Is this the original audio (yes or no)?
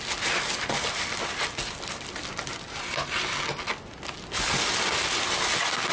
yes